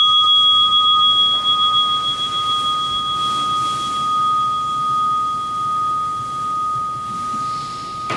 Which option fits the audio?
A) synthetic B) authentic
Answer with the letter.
B